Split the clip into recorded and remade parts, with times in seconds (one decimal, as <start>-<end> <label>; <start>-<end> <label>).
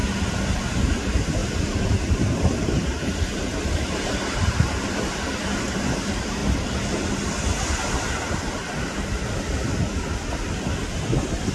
0.0-1.4 remade; 1.4-2.2 recorded; 2.2-6.4 remade; 6.4-11.5 recorded